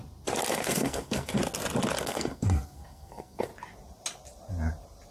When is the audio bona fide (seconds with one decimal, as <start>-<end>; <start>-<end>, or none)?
0.0-0.5; 1.4-2.0; 3.5-5.1

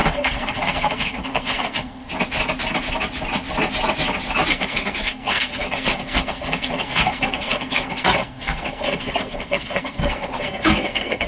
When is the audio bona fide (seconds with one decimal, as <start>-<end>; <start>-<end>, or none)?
2.1-4.5

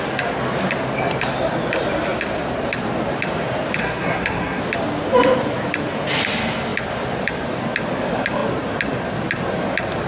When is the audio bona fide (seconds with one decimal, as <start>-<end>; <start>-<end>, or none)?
0.0-3.8; 4.6-10.1

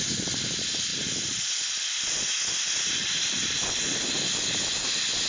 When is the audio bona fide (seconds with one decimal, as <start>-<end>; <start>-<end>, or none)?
0.0-5.3

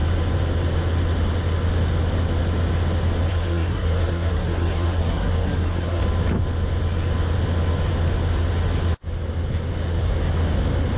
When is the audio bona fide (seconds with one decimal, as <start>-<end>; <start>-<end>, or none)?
0.0-3.3; 6.0-11.0

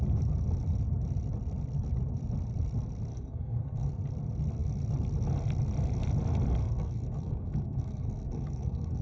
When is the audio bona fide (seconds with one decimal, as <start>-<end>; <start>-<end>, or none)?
0.0-3.1; 3.9-6.6

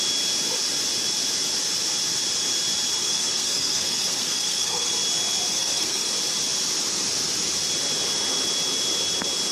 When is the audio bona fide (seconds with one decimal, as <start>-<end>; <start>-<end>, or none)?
0.0-3.0; 4.9-5.5; 6.1-9.5

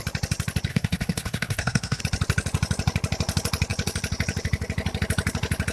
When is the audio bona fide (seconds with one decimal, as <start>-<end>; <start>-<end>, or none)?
0.0-0.7; 2.0-5.7